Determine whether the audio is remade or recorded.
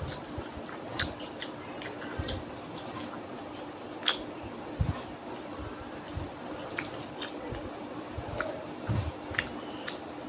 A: recorded